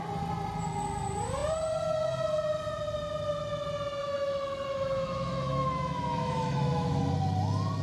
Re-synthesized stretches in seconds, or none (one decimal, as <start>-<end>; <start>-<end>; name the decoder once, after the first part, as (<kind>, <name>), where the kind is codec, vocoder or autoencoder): 4.0-7.0 (autoencoder, DAC-VAE)